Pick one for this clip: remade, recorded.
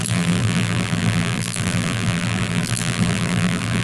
remade